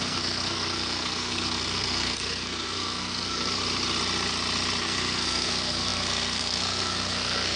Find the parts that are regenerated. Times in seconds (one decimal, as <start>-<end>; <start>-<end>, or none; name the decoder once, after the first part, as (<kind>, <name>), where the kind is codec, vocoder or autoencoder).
0.0-3.6 (codec, SNAC); 4.8-7.6